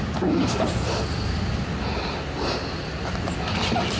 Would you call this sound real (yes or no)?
yes